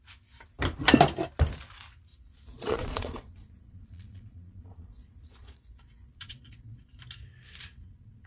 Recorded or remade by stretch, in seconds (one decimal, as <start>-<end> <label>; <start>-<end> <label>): 0.0-2.1 recorded; 2.1-7.0 remade; 7.0-7.6 recorded; 7.6-8.3 remade